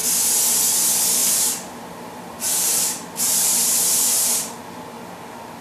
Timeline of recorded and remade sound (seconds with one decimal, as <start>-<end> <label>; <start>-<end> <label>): 0.0-1.2 recorded; 1.2-4.6 remade; 4.6-5.6 recorded